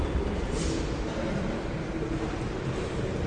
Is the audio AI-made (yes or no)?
no